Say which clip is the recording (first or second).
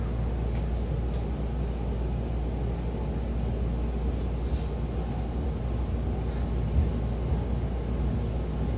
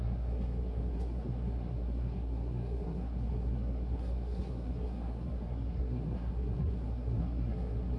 first